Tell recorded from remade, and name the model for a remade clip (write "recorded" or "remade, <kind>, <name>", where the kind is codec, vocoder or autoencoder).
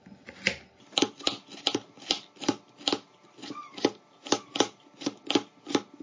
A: recorded